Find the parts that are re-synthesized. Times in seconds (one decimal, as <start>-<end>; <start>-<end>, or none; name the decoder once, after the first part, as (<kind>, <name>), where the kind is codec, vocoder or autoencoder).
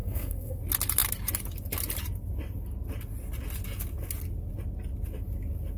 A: 0.0-0.6 (codec, SNAC)